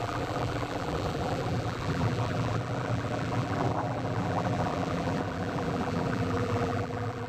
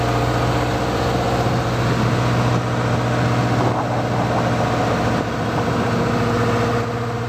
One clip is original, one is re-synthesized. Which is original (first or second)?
second